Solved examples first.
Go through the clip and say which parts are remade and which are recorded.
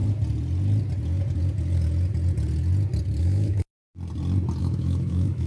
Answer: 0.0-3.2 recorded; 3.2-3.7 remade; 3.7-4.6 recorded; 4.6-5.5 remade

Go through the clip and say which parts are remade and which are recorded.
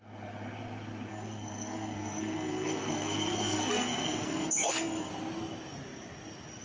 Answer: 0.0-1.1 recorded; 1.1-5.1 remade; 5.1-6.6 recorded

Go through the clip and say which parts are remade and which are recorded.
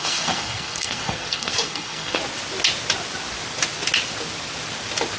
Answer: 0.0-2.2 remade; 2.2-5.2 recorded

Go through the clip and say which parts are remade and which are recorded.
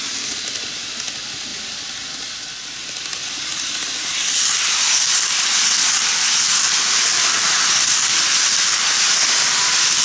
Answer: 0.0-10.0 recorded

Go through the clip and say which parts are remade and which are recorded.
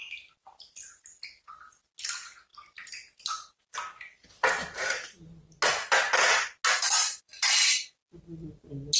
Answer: 0.0-9.0 recorded